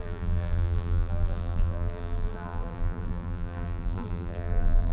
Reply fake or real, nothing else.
fake